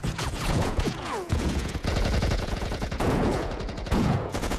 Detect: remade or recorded remade